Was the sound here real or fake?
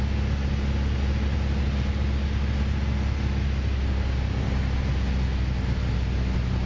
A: real